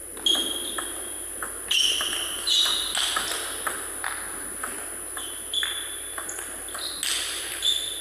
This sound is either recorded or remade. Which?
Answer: recorded